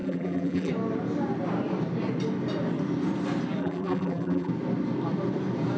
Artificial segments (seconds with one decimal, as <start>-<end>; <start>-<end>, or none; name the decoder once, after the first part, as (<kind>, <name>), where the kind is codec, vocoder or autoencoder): 0.0-0.7 (vocoder, BigVGAN v2); 3.6-4.5